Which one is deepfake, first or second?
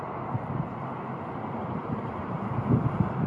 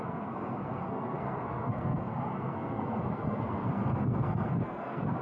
second